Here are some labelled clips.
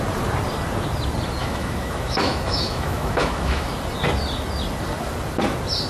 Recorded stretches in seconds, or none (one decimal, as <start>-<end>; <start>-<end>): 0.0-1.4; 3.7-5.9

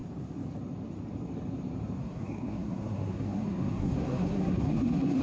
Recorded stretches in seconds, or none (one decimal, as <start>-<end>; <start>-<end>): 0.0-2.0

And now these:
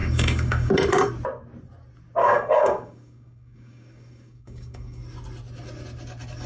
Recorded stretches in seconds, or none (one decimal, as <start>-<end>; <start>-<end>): 0.7-2.2; 5.0-6.5